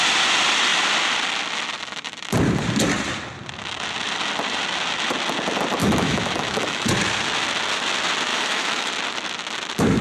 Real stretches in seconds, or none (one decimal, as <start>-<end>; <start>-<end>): 0.0-5.8; 6.9-8.3; 8.9-10.0